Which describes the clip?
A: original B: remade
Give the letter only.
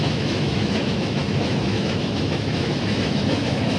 B